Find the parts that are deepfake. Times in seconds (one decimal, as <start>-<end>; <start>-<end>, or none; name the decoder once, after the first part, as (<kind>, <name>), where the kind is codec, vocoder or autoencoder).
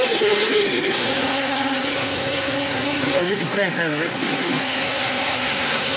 0.0-6.0 (codec, SNAC)